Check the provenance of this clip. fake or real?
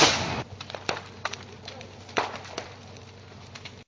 fake